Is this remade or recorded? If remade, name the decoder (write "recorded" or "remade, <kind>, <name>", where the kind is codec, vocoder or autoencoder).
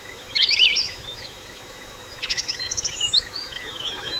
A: remade, autoencoder, DAC-VAE